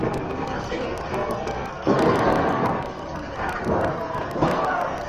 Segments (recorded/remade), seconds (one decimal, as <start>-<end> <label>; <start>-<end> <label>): 0.0-5.1 remade

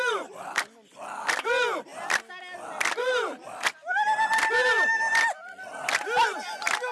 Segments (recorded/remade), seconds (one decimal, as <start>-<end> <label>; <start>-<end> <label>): 0.0-6.9 recorded

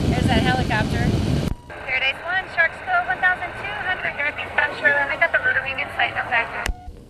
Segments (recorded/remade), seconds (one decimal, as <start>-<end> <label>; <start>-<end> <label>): 0.0-4.0 recorded; 4.0-7.1 remade